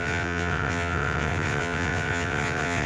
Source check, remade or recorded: remade